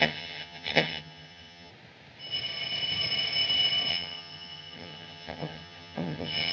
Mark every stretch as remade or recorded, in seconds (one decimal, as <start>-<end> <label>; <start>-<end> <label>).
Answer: 0.0-1.7 remade; 1.7-3.9 recorded; 3.9-6.5 remade